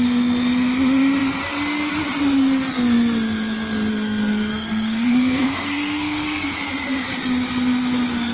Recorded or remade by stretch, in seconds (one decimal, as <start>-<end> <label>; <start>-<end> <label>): 0.0-3.9 recorded; 3.9-6.5 remade; 6.5-8.3 recorded